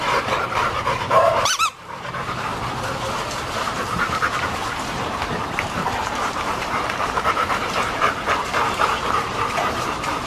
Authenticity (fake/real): fake